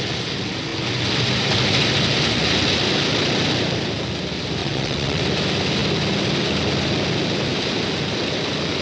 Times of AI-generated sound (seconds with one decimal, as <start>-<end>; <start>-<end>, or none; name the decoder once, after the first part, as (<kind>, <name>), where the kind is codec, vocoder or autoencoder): 4.6-5.2 (vocoder, WaveNeXt)